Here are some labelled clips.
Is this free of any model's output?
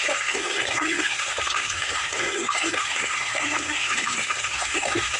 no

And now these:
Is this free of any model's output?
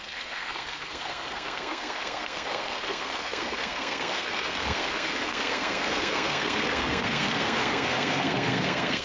no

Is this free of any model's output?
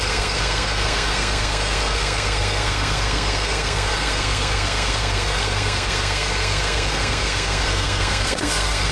no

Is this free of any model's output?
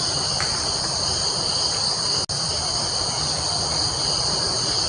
yes